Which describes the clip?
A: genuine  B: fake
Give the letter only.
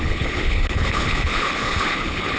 B